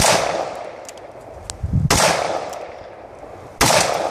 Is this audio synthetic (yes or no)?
no